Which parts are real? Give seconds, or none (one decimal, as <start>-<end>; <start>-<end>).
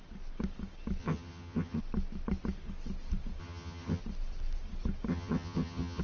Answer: 0.0-1.0; 1.8-3.4; 4.0-5.1